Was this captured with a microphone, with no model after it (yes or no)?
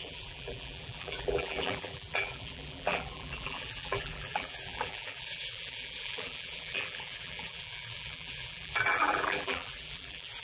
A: no